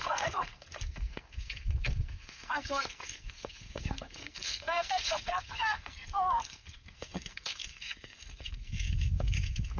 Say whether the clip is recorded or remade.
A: remade